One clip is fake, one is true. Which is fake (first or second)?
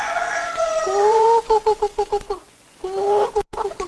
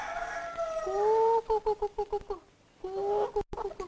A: first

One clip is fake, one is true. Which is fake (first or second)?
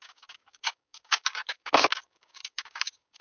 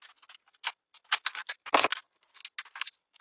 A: first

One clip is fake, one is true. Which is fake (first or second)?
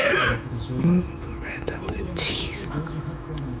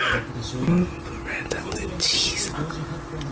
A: first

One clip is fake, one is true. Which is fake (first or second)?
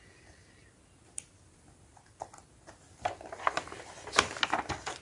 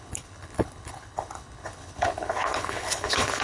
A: second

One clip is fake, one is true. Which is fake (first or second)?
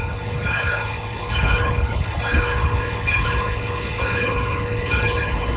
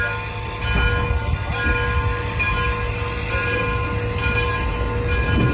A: first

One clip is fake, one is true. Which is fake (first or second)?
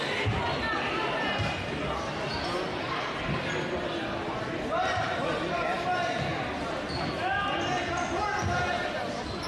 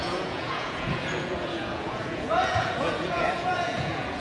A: second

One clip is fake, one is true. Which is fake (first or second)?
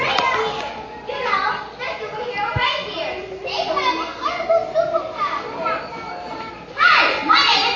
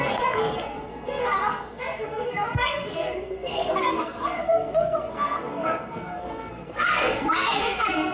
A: second